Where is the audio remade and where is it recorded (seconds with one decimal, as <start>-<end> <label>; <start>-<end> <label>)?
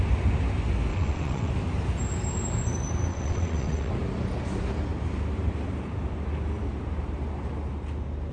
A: 0.0-0.9 recorded; 0.9-1.5 remade; 1.5-3.1 recorded; 3.1-3.9 remade; 3.9-8.3 recorded